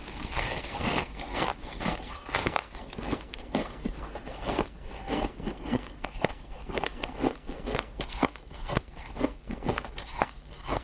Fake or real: fake